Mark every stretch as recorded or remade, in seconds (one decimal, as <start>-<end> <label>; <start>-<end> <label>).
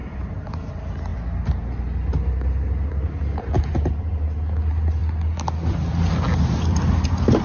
0.0-0.7 remade; 0.7-7.4 recorded